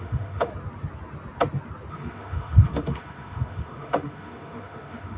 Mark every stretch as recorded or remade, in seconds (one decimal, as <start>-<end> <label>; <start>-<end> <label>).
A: 0.0-0.5 remade; 0.5-1.9 recorded; 1.9-5.2 remade